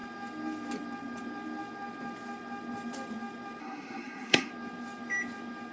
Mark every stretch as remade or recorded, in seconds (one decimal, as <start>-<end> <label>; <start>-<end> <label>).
0.0-3.6 recorded; 3.6-4.5 remade; 4.5-5.7 recorded